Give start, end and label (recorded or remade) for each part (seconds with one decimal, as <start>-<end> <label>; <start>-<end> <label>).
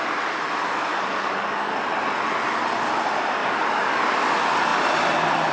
0.0-0.9 recorded; 0.9-1.8 remade; 1.8-3.4 recorded; 3.4-4.0 remade; 4.0-5.5 recorded